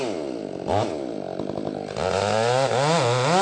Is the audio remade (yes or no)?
no